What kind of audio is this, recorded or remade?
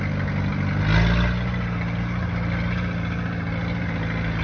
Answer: recorded